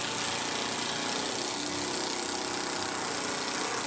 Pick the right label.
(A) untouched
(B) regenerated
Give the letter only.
A